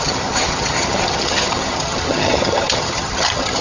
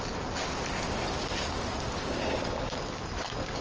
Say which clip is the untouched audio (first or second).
second